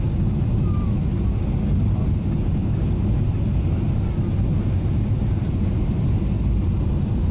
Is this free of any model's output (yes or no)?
yes